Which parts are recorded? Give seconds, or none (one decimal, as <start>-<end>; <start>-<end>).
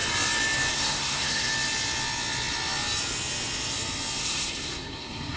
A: 0.0-0.7; 1.5-4.2